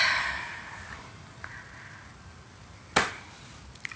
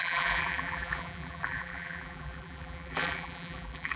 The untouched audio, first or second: first